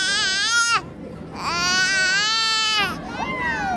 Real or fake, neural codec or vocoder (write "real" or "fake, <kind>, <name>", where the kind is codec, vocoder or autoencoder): real